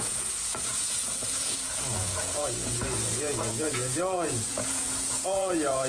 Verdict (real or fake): fake